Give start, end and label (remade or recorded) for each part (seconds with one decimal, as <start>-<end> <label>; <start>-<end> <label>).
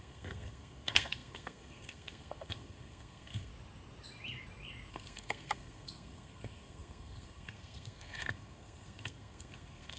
0.0-3.5 remade; 3.5-4.9 recorded; 4.9-10.0 remade